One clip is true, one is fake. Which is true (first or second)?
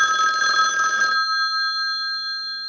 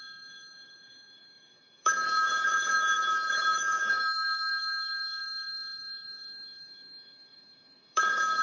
first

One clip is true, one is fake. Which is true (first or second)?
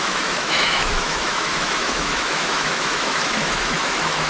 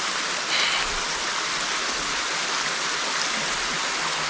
second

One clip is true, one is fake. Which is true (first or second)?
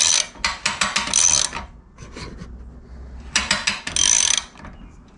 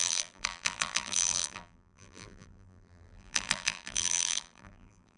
first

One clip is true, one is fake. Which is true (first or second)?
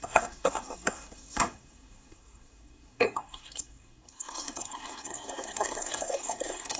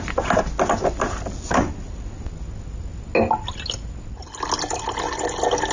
second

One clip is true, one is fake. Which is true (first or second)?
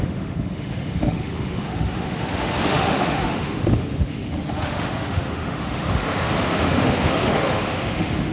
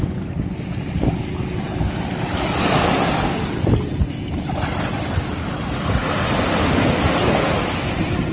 second